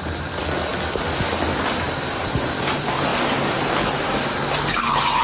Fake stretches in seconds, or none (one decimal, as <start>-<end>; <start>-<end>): none